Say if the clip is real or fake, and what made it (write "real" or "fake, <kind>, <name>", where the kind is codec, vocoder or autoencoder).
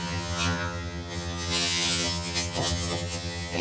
fake, vocoder, HiFi-GAN